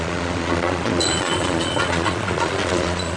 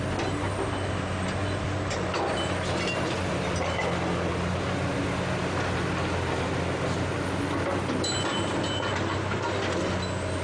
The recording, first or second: second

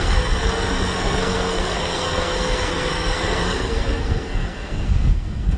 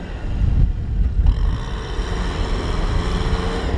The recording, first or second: second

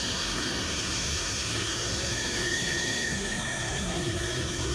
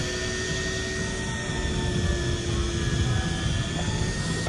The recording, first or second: second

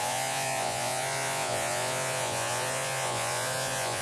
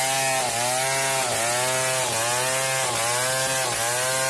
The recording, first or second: second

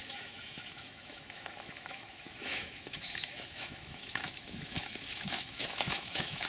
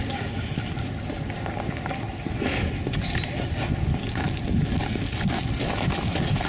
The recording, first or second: second